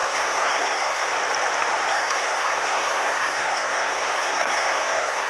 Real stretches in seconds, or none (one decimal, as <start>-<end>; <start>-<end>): 1.1-1.9